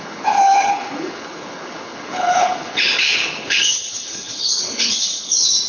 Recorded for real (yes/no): no